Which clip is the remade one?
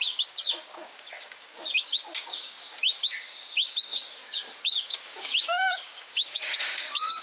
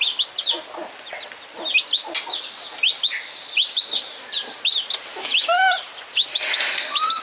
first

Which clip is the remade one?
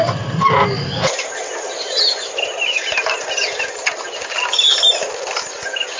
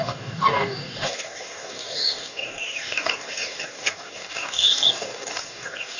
second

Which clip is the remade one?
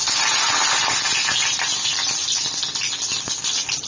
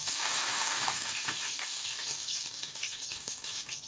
second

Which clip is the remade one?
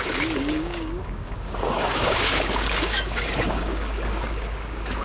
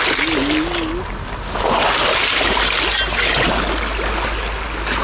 first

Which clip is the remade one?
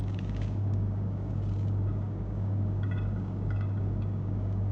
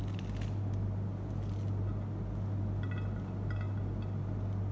first